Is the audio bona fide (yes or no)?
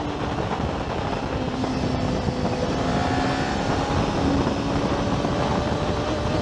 yes